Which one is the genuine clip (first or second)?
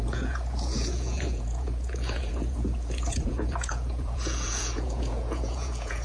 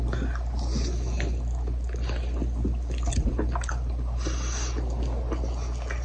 second